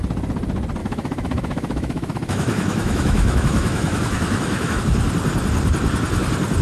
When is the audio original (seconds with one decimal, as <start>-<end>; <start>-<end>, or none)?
0.0-0.8; 4.8-6.6